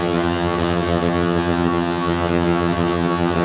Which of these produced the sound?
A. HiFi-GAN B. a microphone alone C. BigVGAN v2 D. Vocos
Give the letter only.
A